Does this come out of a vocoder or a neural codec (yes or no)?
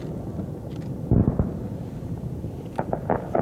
no